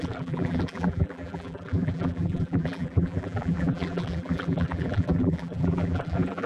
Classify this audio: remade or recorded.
remade